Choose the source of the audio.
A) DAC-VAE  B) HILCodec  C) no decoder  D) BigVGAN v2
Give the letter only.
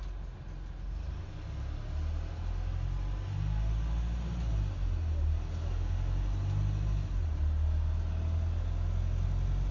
C